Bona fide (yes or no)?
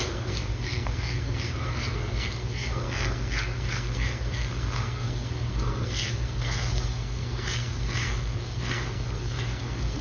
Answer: no